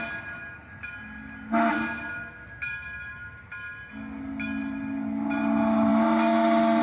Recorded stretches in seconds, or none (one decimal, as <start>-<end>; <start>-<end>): 0.0-6.8